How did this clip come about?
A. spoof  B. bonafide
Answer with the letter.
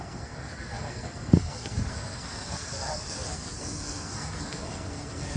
A